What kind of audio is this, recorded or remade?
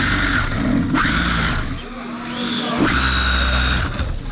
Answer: recorded